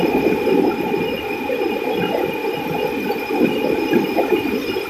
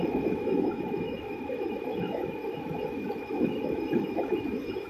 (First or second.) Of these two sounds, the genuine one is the first